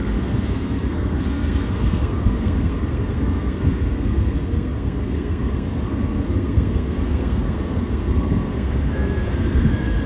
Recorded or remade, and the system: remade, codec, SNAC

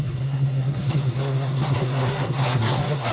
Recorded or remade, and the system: remade, codec, SNAC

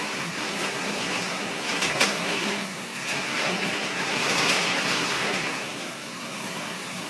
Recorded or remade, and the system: remade, codec, SNAC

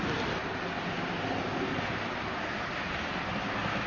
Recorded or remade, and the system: recorded